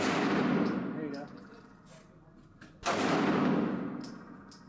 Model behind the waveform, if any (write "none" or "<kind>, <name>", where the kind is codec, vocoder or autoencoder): none